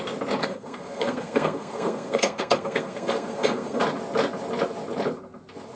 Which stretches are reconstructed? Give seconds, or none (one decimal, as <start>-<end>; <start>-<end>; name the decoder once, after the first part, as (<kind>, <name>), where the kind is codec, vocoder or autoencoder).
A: 0.4-3.8 (codec, SNAC)